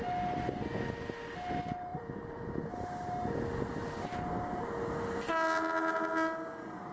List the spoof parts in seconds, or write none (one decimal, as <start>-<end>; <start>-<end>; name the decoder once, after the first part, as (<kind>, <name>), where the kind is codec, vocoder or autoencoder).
1.9-2.7 (vocoder, BigVGAN v2)